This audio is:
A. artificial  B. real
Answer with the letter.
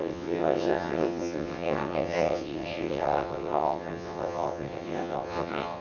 A